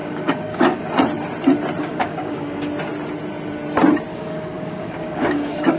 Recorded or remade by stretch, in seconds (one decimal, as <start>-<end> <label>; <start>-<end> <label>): 0.0-0.8 remade; 0.8-1.8 recorded; 1.8-2.7 remade; 2.7-4.1 recorded; 4.1-5.8 remade